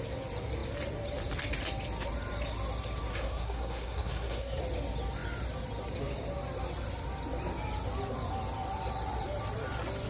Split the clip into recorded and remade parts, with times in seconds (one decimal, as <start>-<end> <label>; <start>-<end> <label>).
0.0-3.1 recorded; 3.1-4.6 remade; 4.6-10.1 recorded